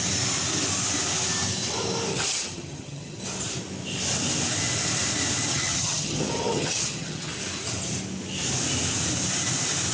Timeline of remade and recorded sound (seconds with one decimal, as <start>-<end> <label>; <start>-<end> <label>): 0.0-2.3 recorded; 2.3-3.2 remade; 3.2-5.5 recorded; 5.5-7.3 remade; 7.3-9.9 recorded